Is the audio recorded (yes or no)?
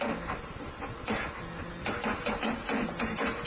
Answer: yes